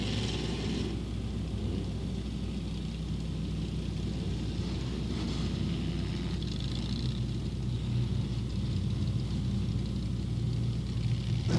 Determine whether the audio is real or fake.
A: real